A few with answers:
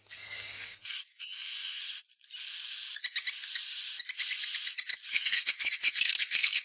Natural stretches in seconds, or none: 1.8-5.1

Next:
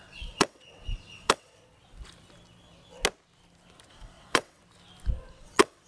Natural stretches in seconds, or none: 1.6-3.9; 4.6-5.3

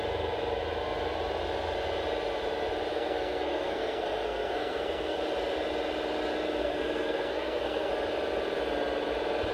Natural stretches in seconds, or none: 0.0-2.9; 5.2-6.6; 7.9-9.5

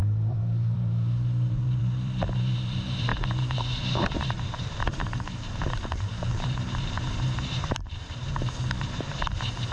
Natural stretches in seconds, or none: none